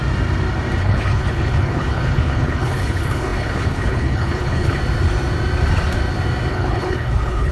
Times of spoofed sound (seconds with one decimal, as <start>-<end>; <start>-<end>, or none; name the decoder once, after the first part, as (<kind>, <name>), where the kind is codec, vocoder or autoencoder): 0.8-4.8 (codec, HILCodec); 6.5-7.5